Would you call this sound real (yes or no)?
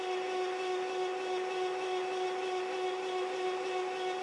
yes